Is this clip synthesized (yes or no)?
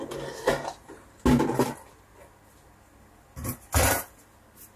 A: no